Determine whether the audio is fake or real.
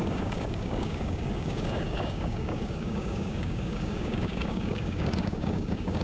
fake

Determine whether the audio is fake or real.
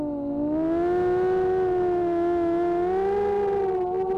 real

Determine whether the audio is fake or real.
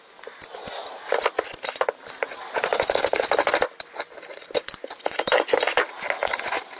real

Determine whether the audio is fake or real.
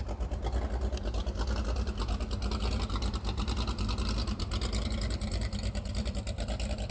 real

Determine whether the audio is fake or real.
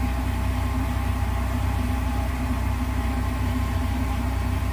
fake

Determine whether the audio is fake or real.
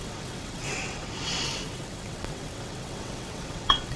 fake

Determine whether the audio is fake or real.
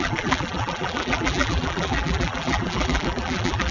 fake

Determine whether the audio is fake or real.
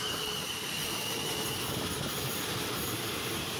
fake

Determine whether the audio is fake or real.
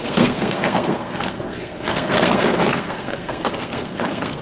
fake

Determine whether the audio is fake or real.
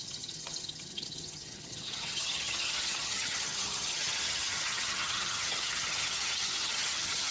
fake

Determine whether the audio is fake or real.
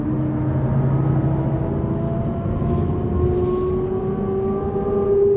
real